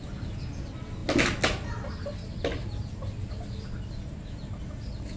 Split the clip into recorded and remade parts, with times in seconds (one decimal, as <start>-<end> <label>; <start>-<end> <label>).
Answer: 0.0-5.2 recorded